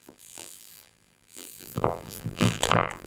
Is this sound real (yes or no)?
no